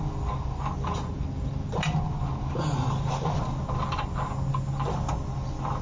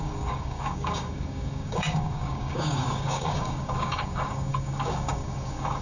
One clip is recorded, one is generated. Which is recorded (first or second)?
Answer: first